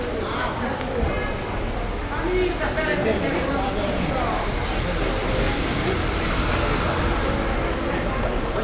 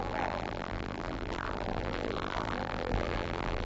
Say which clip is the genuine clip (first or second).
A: first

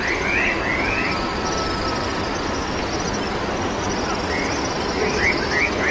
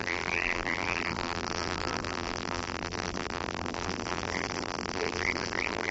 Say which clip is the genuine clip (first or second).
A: first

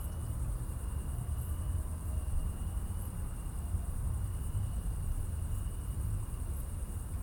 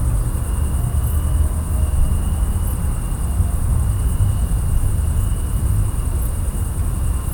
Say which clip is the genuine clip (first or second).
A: second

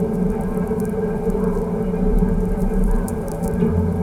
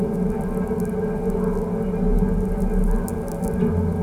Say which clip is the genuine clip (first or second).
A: second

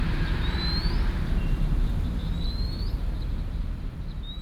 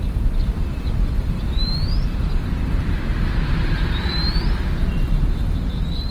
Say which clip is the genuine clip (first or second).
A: first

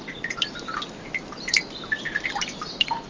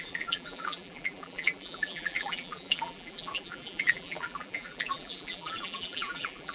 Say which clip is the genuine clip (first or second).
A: first